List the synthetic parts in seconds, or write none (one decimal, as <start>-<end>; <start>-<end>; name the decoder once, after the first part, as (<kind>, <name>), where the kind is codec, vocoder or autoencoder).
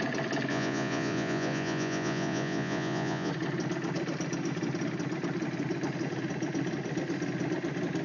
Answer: 0.5-3.3 (vocoder, Vocos)